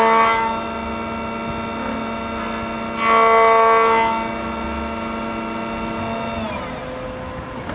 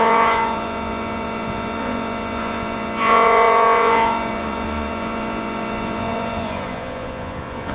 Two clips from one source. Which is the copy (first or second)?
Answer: second